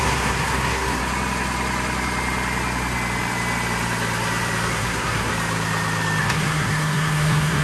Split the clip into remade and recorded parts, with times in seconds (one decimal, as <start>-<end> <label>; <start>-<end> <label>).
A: 0.0-1.0 remade; 1.0-4.7 recorded; 4.7-5.3 remade; 5.3-6.2 recorded; 6.2-7.6 remade